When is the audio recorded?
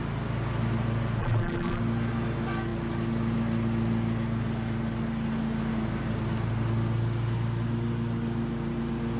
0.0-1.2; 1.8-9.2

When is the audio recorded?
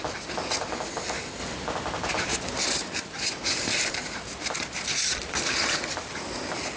0.0-6.8